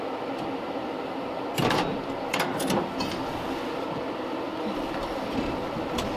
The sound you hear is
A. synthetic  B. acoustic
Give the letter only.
A